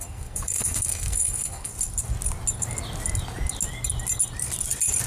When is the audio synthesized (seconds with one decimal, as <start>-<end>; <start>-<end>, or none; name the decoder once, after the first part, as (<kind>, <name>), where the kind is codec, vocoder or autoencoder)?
0.0-1.7 (codec, SNAC)